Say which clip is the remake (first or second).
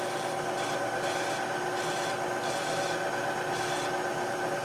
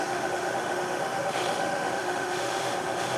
second